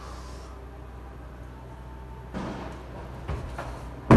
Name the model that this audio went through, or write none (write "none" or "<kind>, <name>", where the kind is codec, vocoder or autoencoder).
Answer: none